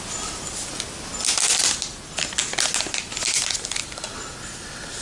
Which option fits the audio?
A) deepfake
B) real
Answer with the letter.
B